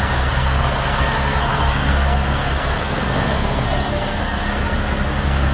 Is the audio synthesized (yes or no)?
yes